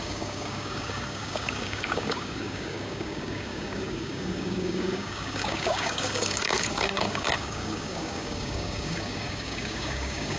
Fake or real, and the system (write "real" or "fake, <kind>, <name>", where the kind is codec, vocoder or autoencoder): fake, codec, DAC